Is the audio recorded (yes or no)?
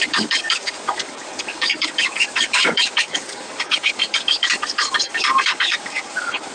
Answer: no